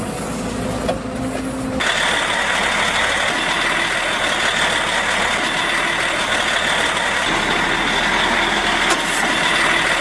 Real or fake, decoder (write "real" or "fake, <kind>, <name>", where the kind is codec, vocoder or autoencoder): real